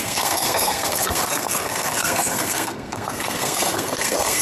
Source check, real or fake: fake